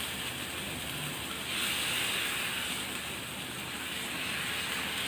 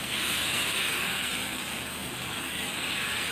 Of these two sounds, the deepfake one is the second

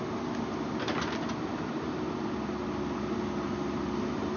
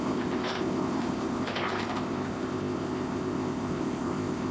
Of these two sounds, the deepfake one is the second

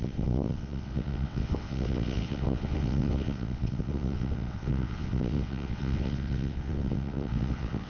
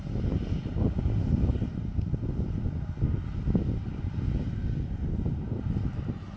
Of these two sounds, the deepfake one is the first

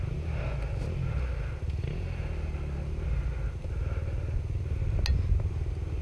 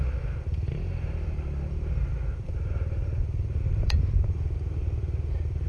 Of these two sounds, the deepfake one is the second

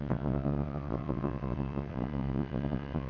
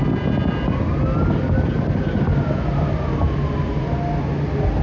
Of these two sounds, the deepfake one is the first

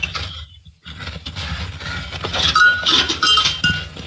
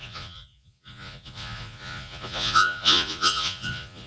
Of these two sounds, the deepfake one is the second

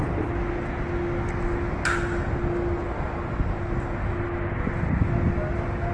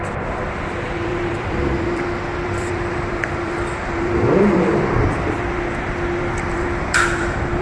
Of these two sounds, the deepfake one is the second